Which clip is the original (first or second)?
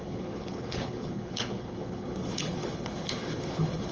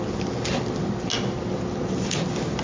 second